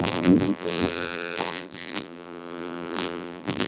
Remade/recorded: remade